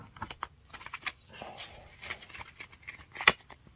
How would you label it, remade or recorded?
recorded